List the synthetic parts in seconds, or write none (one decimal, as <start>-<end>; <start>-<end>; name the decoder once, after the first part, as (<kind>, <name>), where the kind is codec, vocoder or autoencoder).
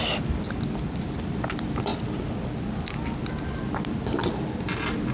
none